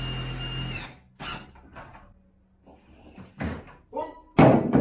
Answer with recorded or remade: recorded